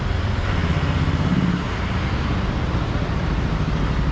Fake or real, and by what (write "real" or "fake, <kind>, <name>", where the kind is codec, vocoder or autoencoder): real